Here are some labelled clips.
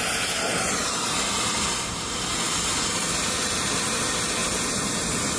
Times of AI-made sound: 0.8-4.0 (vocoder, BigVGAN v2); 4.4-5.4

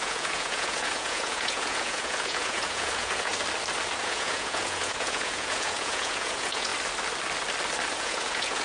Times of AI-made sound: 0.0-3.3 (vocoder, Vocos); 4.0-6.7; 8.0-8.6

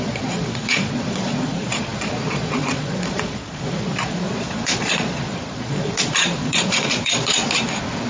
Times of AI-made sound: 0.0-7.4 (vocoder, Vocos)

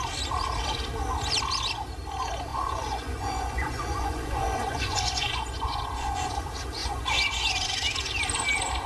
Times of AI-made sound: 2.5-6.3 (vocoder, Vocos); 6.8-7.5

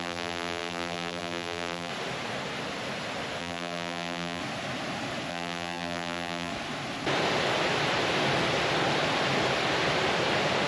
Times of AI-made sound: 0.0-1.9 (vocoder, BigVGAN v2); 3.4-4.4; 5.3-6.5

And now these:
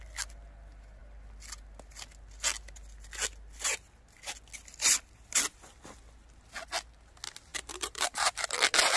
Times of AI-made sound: 7.5-8.5 (vocoder, BigVGAN v2)

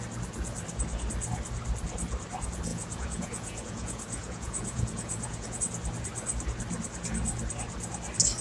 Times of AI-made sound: 2.7-5.6 (vocoder, Vocos)

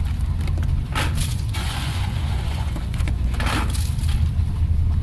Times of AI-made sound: 1.3-3.4 (vocoder, Vocos)